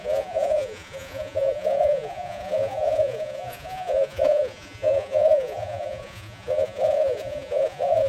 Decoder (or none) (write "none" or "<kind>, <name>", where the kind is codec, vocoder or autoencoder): vocoder, Vocos